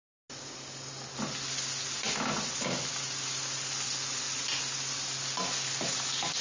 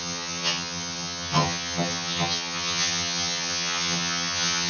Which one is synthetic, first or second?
second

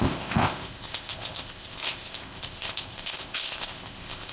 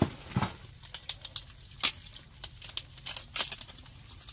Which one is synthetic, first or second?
first